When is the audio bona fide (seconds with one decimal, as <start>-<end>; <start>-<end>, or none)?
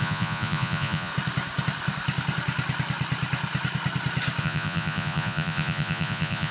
1.1-4.4